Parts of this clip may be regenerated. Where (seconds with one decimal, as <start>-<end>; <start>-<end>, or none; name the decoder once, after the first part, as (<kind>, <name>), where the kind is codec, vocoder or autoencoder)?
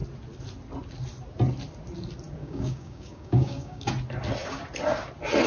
2.4-3.9 (codec, DAC)